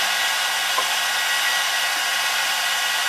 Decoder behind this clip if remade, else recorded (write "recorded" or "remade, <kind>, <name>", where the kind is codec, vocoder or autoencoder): recorded